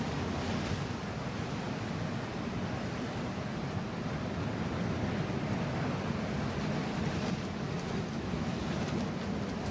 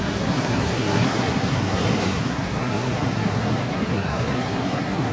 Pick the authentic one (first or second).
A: first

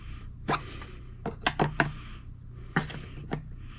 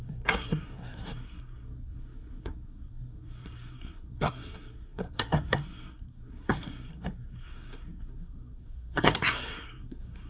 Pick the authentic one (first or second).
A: first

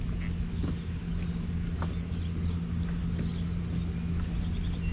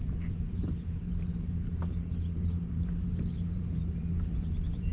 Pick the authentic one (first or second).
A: first